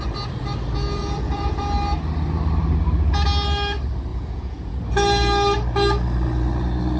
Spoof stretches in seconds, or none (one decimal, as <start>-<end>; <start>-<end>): 1.0-1.6; 4.1-4.8